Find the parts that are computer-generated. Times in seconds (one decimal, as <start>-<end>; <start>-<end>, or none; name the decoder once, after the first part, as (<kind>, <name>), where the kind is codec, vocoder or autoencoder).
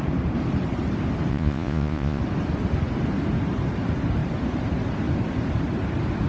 1.3-2.2 (vocoder, Vocos)